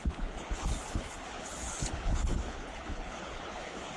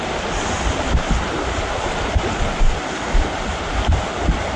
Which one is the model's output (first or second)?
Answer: first